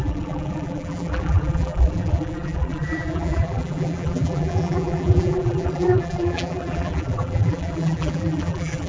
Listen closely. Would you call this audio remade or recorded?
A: remade